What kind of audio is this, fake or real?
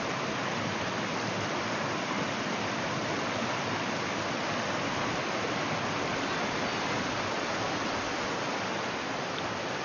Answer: real